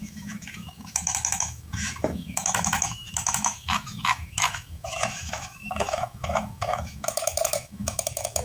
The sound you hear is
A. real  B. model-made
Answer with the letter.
B